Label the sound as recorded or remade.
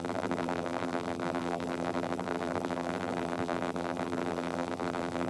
remade